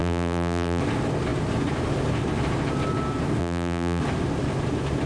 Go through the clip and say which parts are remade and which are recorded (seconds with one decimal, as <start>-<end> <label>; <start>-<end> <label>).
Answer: 0.0-0.8 remade; 0.8-3.4 recorded; 3.4-4.0 remade; 4.0-5.1 recorded